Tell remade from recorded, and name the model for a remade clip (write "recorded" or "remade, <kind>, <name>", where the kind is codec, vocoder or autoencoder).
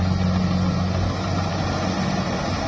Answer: recorded